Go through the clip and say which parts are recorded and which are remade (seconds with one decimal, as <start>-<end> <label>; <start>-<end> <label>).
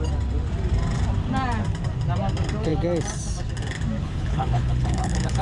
0.0-4.0 recorded; 4.0-5.4 remade